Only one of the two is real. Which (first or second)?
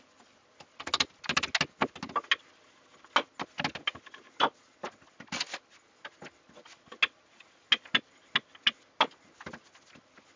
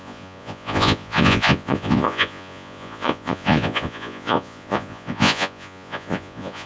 first